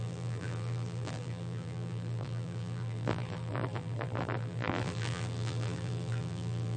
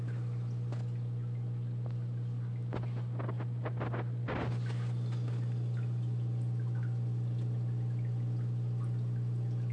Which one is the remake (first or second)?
first